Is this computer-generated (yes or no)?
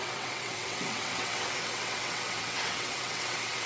yes